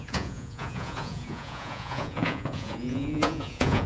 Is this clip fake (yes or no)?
yes